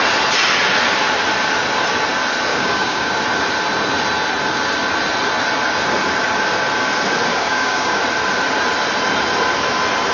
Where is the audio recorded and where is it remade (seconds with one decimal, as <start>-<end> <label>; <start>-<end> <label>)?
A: 0.0-2.5 recorded; 2.5-3.1 remade; 3.1-7.3 recorded; 7.3-8.0 remade; 8.0-10.1 recorded